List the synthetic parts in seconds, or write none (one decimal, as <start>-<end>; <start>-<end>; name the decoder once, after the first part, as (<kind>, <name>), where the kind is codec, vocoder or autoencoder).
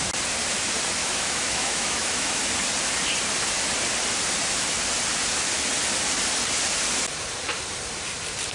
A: 1.0-2.4 (autoencoder, DAC-VAE)